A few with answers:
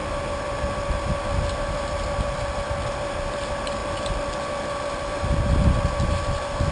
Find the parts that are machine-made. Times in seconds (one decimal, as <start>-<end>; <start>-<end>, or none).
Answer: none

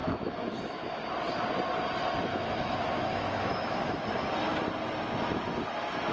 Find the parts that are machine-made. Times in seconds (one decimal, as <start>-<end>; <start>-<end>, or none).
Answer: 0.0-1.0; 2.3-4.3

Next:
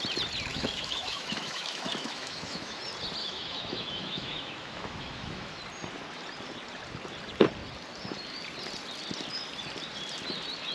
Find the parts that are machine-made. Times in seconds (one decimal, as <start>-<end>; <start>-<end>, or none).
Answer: 0.5-2.8; 3.2-5.6

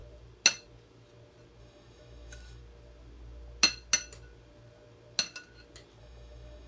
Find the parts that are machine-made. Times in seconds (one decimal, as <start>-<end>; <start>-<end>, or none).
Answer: 1.6-2.6; 6.0-6.7